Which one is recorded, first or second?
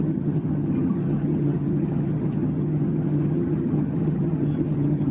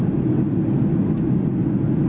second